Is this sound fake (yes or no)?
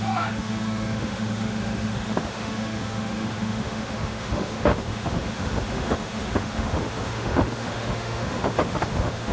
yes